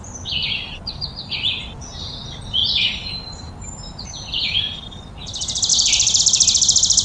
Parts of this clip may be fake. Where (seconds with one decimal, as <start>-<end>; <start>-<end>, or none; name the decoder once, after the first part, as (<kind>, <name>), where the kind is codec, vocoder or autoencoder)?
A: 0.4-1.8 (vocoder, BigVGAN v2); 2.6-5.0; 5.7-6.2